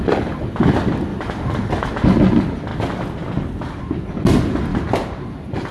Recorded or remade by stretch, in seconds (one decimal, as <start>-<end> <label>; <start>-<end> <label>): 0.0-1.1 recorded; 1.1-1.7 remade; 1.7-4.7 recorded; 4.7-5.7 remade